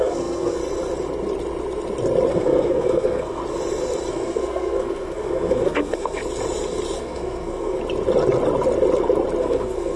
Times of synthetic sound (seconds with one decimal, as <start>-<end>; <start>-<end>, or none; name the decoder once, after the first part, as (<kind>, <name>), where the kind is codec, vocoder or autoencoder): 0.0-0.6 (codec, SNAC); 2.3-3.4; 4.1-6.2; 7.0-7.8; 9.4-10.0

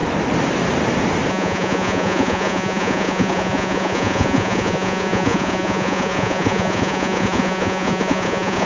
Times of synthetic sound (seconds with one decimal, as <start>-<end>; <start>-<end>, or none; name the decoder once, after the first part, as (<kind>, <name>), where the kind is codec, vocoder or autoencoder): 1.3-8.7 (vocoder, Vocos)

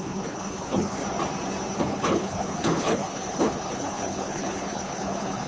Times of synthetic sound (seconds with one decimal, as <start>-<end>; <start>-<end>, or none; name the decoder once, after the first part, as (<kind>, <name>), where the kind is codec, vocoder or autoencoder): 0.0-1.0 (codec, HILCodec); 1.8-5.5

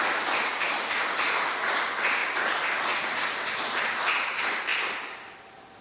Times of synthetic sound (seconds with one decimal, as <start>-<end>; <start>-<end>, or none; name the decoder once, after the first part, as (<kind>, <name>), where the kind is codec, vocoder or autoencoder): none

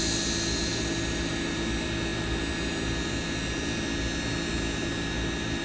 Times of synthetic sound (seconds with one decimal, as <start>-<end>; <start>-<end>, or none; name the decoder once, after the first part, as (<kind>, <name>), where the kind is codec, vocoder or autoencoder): none

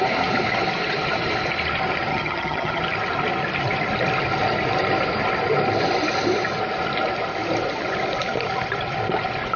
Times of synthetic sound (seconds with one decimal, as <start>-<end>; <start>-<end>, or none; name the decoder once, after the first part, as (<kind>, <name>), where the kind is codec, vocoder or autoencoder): 2.1-2.8 (vocoder, HiFi-GAN)